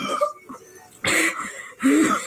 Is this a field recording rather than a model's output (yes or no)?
no